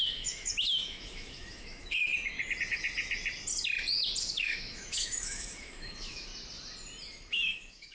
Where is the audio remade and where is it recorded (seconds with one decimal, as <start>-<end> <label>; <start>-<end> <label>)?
0.0-2.1 remade; 2.1-4.2 recorded; 4.2-6.3 remade; 6.3-7.3 recorded; 7.3-7.9 remade